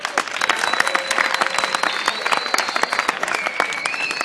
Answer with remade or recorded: recorded